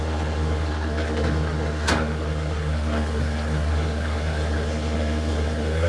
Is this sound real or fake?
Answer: fake